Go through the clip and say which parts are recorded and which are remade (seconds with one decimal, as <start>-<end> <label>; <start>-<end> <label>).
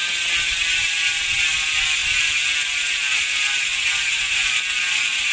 0.0-5.3 recorded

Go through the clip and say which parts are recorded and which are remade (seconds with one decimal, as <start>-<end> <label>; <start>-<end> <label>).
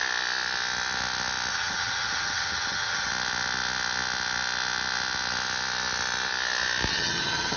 0.0-1.5 recorded; 1.5-3.1 remade; 3.1-6.9 recorded; 6.9-7.6 remade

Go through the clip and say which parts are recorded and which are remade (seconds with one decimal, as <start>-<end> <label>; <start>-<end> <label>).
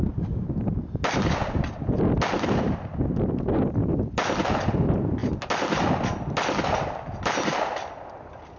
0.0-8.6 recorded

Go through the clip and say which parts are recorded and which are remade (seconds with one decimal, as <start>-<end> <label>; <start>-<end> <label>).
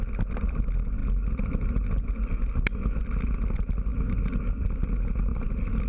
0.0-5.9 recorded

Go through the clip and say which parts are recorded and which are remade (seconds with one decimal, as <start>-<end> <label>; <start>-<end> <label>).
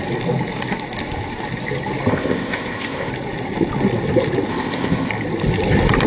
0.0-2.1 recorded; 2.1-3.1 remade; 3.1-4.5 recorded; 4.5-5.1 remade; 5.1-6.1 recorded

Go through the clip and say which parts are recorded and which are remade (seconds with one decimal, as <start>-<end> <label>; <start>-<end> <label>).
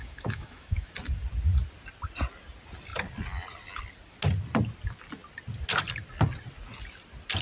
0.0-0.9 remade; 0.9-7.4 recorded